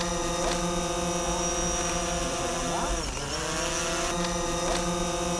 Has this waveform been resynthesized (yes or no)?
no